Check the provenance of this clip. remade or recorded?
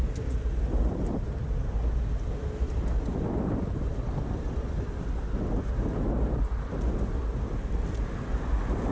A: recorded